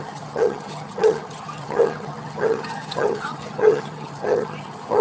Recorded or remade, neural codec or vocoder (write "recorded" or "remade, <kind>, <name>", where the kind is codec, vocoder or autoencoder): remade, vocoder, HiFi-GAN